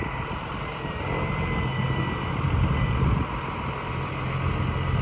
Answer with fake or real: real